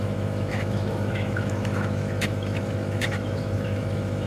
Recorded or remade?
remade